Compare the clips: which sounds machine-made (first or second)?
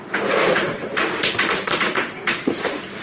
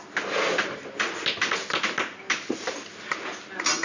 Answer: first